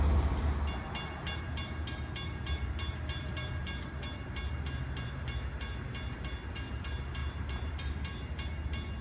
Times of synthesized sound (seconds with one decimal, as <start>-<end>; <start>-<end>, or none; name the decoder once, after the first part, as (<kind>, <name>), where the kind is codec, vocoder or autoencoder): 7.2-7.9 (vocoder, BigVGAN v2)